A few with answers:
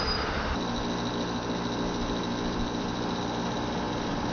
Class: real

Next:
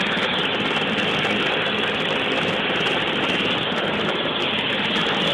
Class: real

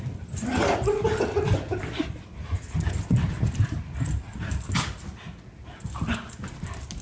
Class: real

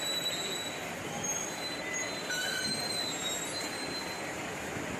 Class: real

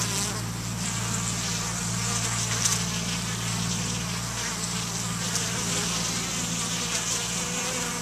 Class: real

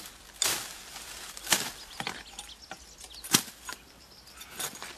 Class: real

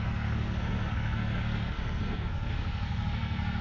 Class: fake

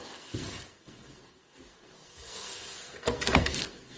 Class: fake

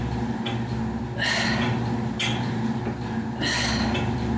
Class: real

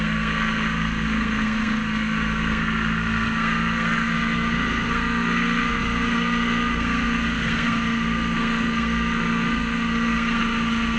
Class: fake